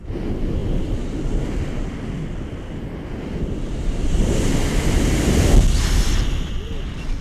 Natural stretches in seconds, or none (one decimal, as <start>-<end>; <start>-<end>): 0.0-7.2